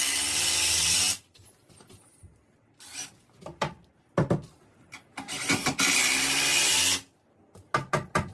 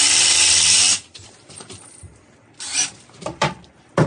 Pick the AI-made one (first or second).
second